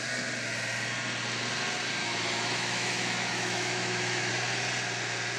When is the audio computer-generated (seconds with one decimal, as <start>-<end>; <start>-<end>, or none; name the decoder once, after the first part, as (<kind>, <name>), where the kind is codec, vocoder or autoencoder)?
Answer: 2.0-4.3 (autoencoder, DAC-VAE)